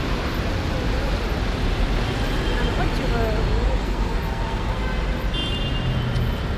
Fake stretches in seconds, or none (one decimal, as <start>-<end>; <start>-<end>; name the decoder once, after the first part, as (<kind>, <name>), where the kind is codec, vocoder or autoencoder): 3.8-4.8 (codec, SNAC)